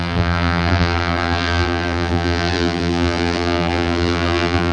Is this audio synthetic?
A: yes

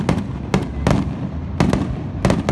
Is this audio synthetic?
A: no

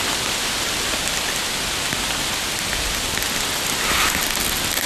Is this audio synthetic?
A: no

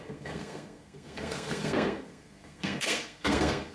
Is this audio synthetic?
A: yes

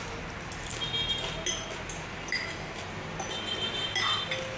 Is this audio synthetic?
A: no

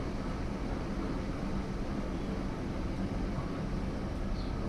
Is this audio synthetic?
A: no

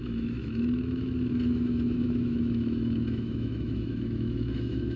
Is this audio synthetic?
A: yes